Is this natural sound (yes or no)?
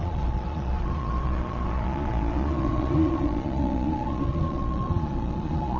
no